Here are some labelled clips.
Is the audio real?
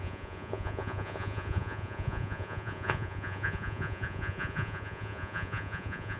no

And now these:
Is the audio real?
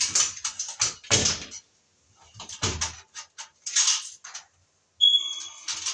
yes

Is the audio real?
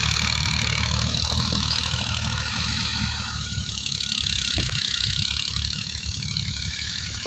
no